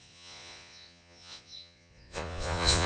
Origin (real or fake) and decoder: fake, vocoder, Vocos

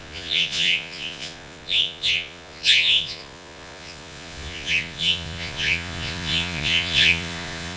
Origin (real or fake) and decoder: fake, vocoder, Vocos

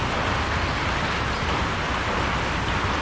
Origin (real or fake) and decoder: real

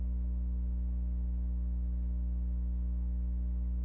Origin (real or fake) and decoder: real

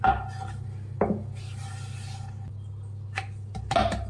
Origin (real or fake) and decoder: real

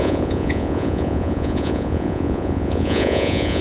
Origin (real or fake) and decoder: fake, vocoder, Vocos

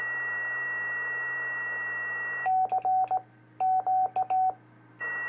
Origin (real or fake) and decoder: real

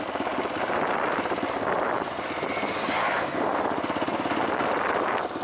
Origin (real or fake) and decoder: real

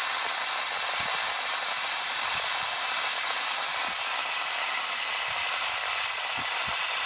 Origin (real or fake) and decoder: real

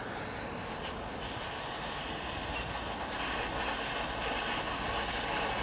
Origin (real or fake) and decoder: real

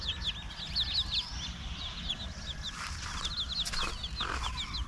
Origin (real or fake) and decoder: real